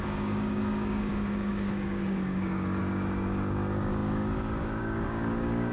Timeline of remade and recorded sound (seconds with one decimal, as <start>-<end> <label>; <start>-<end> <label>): 0.0-5.7 remade